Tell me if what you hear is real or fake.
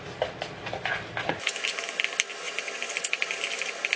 real